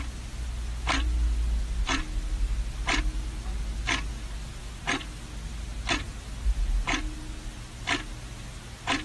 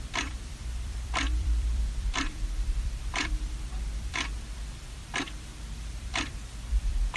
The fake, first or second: second